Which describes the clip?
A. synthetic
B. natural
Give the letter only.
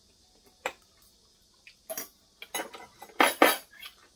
B